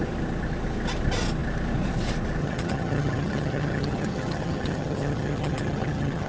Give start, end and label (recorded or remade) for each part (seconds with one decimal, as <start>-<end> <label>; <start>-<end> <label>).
0.0-2.4 recorded; 2.4-6.3 remade

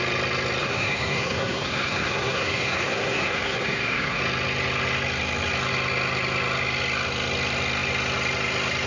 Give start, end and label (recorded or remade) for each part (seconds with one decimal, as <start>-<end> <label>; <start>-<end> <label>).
0.0-0.6 recorded; 0.6-4.2 remade; 4.2-8.9 recorded